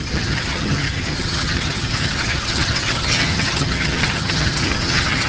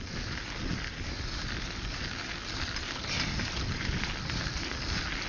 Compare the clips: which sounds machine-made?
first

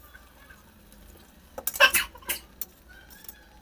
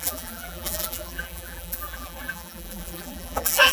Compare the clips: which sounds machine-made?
second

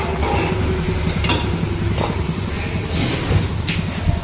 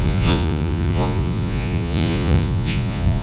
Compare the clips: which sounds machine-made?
second